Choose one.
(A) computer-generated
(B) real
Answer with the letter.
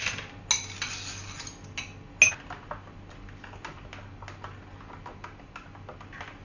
B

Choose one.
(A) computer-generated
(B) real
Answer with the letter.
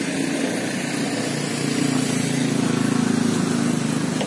B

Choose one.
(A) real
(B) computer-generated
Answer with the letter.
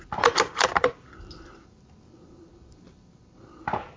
A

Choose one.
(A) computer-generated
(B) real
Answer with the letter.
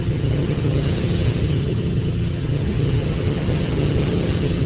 A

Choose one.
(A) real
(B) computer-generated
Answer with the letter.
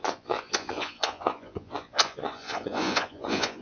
B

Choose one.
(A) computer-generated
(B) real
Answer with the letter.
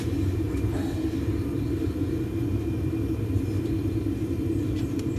A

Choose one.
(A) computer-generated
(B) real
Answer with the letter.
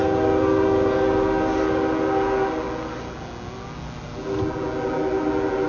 B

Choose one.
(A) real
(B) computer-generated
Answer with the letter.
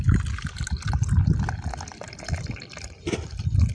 A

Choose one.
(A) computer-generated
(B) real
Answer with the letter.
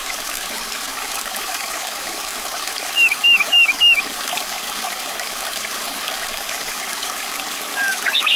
A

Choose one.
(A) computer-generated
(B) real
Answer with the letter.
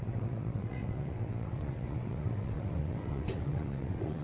A